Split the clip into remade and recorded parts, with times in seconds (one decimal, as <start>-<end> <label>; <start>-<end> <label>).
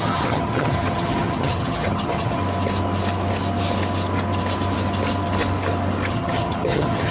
0.0-2.4 remade; 2.4-6.1 recorded; 6.1-7.1 remade